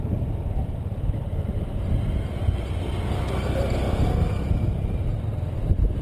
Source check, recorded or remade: recorded